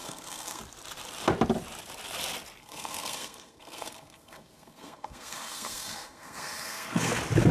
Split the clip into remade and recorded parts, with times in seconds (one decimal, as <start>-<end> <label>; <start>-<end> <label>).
0.0-0.6 remade; 0.6-2.6 recorded; 2.6-7.1 remade; 7.1-7.5 recorded